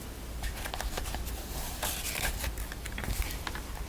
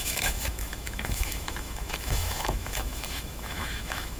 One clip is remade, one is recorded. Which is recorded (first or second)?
first